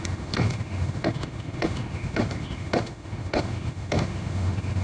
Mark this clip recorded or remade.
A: remade